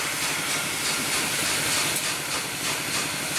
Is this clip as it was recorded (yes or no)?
yes